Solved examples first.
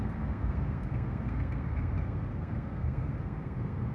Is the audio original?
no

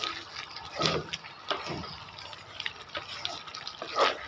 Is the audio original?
yes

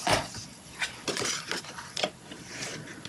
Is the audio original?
no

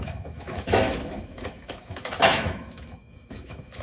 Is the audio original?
no